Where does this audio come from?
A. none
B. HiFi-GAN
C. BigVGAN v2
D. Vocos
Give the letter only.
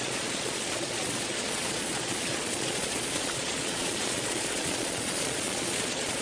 D